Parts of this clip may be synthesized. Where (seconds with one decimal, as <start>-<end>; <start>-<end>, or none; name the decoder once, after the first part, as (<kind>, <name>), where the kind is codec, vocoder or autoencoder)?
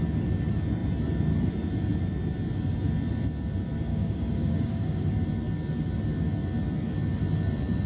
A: 3.9-5.1 (codec, DAC)